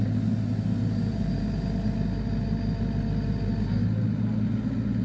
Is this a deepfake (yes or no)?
no